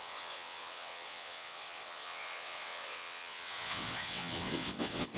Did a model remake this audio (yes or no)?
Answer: yes